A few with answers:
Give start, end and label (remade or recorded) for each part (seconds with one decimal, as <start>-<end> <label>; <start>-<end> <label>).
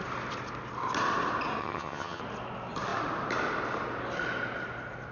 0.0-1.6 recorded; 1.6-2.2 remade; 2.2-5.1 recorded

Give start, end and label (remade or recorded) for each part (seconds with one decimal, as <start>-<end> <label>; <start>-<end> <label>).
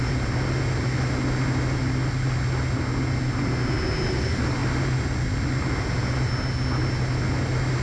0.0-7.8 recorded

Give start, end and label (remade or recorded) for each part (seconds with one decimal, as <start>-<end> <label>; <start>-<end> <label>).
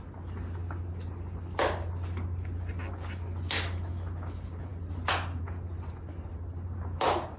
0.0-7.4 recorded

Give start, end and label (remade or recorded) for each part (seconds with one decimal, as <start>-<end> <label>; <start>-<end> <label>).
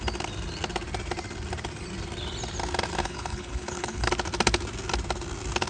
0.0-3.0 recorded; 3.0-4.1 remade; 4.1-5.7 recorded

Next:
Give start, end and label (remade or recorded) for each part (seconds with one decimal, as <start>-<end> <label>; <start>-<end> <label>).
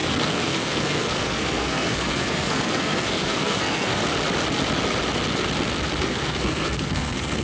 0.0-4.0 remade; 4.0-6.0 recorded; 6.0-7.4 remade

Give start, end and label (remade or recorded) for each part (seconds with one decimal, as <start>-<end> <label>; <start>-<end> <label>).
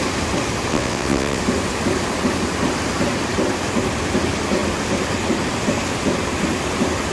0.0-0.7 recorded; 0.7-1.4 remade; 1.4-7.1 recorded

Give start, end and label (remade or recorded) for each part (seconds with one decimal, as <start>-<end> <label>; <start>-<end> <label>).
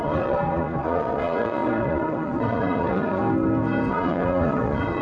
0.0-3.2 remade; 3.2-3.9 recorded; 3.9-5.0 remade